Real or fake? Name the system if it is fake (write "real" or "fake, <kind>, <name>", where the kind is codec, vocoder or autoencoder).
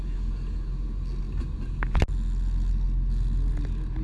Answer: real